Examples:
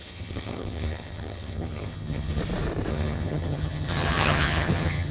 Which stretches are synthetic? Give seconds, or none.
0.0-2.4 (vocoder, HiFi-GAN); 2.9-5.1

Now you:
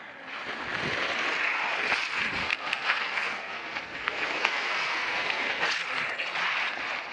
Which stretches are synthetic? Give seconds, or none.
2.4-5.6 (codec, SNAC)

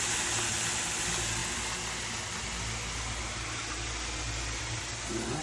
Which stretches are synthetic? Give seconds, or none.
none

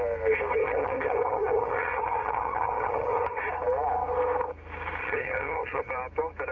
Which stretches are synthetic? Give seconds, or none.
0.6-3.4 (vocoder, HiFi-GAN); 5.0-5.9

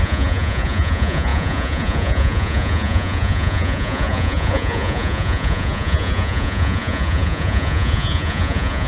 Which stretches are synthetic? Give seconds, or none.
0.0-8.9 (vocoder, Vocos)

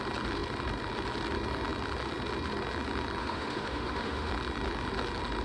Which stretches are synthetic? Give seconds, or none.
3.2-4.3 (autoencoder, DAC-VAE)

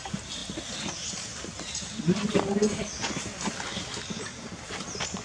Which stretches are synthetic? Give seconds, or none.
none